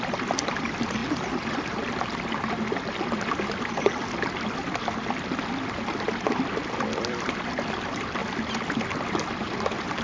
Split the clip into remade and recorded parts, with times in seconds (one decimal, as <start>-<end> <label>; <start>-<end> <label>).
0.0-10.0 recorded